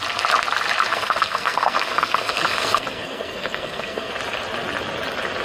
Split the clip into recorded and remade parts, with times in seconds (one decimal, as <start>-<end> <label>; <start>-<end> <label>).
0.0-0.9 recorded; 0.9-4.1 remade; 4.1-5.4 recorded